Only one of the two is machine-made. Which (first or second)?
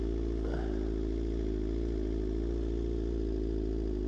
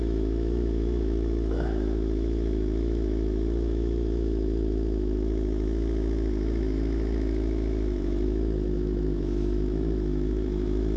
second